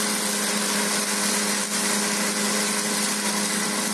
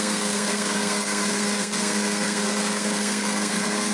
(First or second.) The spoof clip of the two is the second